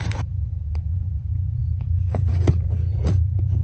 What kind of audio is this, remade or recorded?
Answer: remade